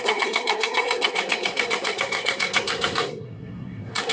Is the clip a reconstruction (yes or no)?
yes